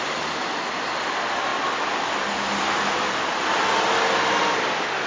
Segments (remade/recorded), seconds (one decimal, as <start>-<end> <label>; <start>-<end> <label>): 0.0-5.1 recorded